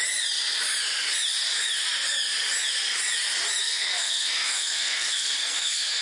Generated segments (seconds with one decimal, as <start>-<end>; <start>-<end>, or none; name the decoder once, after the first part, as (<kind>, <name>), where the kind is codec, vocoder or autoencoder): 3.6-6.0 (codec, SNAC)